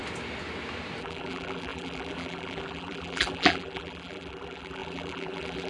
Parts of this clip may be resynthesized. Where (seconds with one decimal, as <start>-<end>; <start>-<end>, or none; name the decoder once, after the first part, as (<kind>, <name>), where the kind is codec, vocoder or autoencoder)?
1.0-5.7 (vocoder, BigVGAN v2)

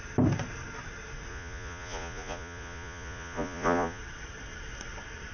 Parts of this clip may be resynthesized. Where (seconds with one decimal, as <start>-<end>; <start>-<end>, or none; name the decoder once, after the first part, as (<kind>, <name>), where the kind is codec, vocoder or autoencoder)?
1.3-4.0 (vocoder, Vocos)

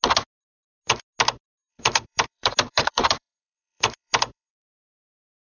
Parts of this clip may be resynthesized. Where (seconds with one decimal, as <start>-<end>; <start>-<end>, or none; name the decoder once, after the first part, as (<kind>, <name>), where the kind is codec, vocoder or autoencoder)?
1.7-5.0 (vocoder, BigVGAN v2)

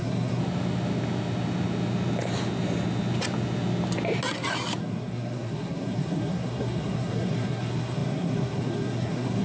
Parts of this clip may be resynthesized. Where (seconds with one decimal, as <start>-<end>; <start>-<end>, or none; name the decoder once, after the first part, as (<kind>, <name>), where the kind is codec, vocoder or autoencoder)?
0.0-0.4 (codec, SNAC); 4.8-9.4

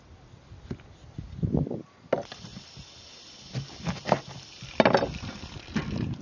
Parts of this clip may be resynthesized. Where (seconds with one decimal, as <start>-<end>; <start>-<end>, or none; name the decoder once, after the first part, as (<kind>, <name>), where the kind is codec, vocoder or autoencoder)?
none